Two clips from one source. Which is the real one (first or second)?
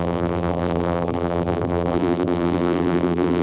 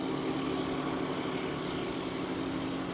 second